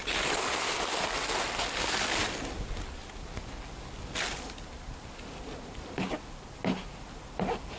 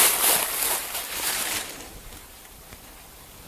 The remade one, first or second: second